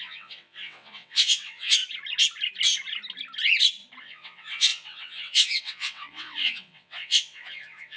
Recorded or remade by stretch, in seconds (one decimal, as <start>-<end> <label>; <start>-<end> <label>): 0.0-1.8 remade; 1.8-4.0 recorded; 4.0-8.0 remade